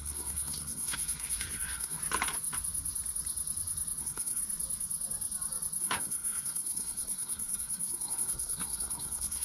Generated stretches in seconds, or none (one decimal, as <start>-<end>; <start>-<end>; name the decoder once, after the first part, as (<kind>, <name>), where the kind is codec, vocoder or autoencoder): 0.0-2.0 (codec, SNAC); 4.0-4.4; 5.8-9.4